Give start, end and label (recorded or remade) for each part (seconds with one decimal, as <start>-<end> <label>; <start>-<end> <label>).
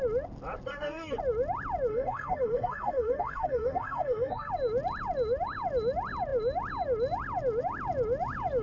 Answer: 0.0-0.7 recorded; 0.7-1.2 remade; 1.2-1.9 recorded; 1.9-4.5 remade; 4.5-8.6 recorded